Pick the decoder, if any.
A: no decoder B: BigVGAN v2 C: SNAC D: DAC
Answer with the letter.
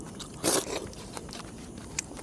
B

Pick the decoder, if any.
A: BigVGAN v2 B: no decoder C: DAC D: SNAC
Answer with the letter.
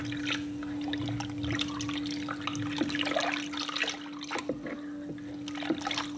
B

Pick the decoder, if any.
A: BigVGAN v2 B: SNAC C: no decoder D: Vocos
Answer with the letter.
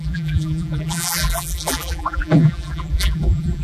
A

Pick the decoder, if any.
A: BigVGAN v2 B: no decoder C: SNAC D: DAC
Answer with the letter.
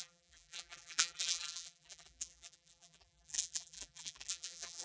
A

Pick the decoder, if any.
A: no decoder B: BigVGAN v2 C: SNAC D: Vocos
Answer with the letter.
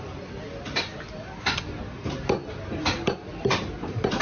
A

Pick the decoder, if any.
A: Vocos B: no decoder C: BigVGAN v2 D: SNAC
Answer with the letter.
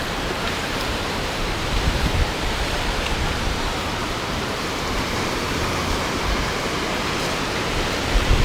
C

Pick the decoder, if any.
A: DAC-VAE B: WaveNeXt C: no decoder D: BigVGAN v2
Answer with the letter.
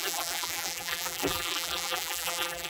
D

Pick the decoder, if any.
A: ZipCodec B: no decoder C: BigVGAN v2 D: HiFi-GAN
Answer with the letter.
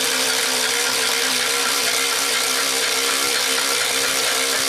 C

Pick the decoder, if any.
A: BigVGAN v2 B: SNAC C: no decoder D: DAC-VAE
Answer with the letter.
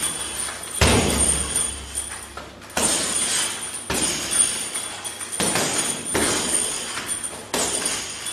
C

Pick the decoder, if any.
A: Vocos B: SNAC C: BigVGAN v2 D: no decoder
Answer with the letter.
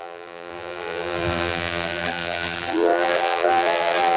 C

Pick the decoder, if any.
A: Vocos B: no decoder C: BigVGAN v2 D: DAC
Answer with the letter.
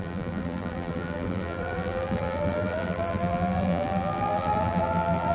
C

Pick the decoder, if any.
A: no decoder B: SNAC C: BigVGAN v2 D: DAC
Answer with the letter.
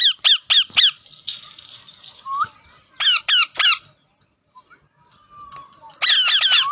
A